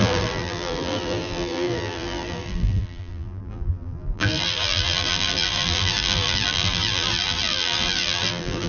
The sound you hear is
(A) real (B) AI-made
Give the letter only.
B